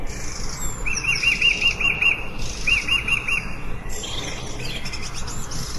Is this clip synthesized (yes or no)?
no